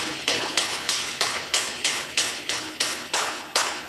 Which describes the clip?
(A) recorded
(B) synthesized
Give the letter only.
B